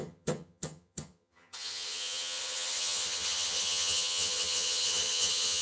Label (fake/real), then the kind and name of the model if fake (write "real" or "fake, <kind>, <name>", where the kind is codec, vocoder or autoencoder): fake, vocoder, HiFi-GAN